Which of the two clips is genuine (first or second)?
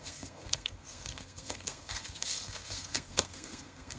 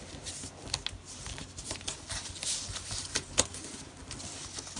second